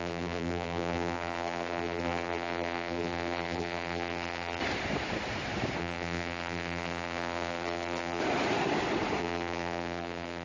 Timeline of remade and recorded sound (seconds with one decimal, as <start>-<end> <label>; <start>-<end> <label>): 0.0-4.6 remade; 4.6-5.8 recorded; 5.8-8.2 remade; 8.2-9.2 recorded; 9.2-10.4 remade